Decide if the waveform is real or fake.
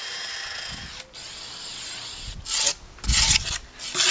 real